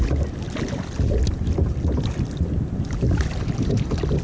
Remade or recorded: recorded